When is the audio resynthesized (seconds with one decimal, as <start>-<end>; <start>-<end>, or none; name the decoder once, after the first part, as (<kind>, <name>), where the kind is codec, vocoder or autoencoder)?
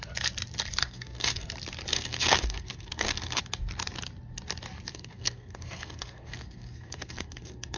0.8-1.5 (codec, SNAC); 1.9-3.4; 4.9-7.8